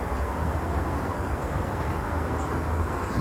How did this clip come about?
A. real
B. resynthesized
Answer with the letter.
B